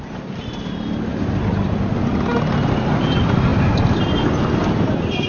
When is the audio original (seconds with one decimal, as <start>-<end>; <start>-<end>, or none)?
0.0-5.3